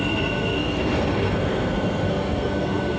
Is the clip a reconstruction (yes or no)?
yes